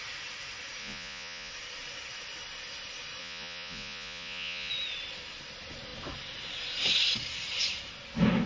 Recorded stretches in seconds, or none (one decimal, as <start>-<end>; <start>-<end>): 0.0-0.8; 1.5-3.2; 4.7-8.5